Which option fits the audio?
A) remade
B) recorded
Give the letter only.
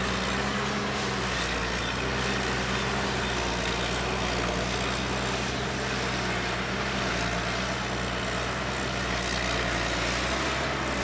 B